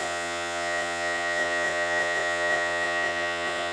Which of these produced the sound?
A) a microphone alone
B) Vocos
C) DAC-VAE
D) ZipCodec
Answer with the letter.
B